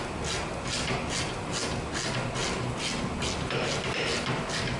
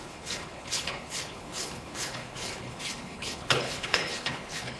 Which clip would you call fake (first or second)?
second